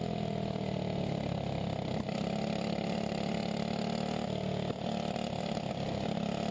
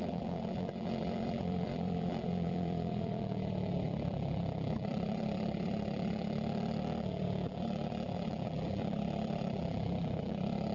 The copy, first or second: second